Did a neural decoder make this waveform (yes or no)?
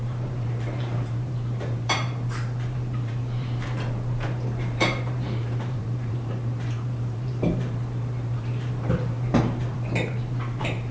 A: yes